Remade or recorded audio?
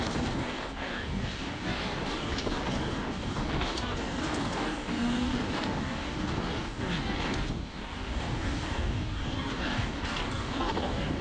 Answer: remade